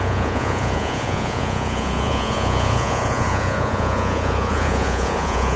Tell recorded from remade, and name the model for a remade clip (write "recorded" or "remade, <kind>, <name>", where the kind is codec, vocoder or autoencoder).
remade, vocoder, Vocos